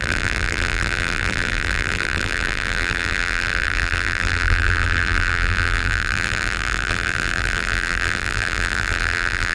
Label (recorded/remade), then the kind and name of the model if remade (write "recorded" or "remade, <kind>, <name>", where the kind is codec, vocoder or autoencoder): remade, vocoder, BigVGAN v2